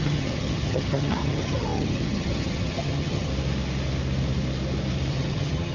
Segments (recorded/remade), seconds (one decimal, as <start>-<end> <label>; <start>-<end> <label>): 0.0-3.3 remade; 3.3-5.1 recorded; 5.1-5.7 remade